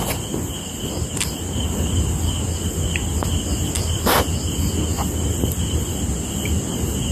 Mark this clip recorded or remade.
recorded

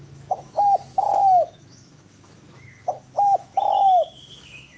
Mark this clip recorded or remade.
remade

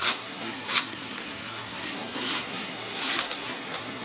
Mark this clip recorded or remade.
remade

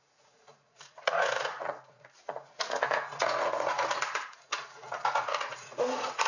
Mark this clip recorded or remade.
remade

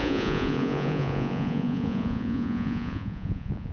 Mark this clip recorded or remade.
remade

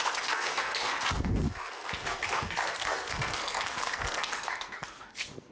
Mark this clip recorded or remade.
remade